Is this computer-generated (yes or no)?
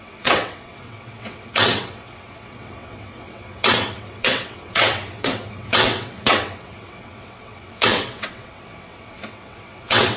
yes